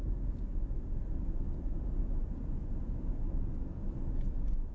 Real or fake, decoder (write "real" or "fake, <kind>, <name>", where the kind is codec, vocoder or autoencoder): real